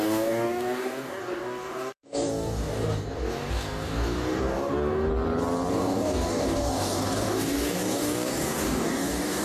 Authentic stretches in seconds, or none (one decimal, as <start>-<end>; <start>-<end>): 5.1-5.7